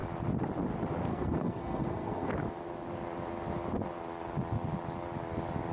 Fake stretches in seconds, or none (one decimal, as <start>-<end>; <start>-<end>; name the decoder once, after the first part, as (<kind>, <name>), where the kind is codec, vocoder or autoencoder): 1.1-2.3 (codec, SNAC)